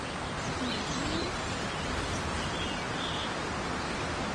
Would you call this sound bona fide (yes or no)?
yes